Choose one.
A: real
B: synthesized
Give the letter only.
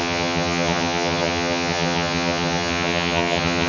B